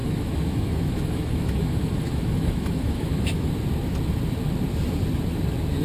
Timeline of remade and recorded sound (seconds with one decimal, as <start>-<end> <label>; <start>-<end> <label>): 0.0-3.5 remade; 3.5-5.8 recorded